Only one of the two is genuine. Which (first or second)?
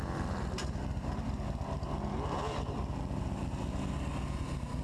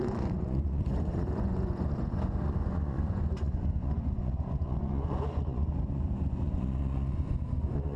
first